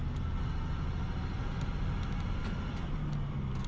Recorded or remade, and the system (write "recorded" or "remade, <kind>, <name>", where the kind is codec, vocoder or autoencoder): recorded